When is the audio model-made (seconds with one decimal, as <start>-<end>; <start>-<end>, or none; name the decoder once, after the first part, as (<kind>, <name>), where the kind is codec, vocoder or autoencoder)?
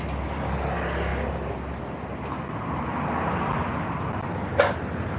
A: none